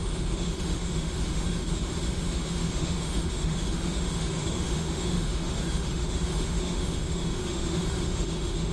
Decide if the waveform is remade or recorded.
remade